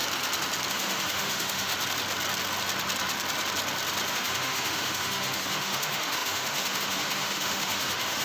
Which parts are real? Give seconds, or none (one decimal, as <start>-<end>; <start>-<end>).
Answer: 0.0-0.7; 1.7-4.1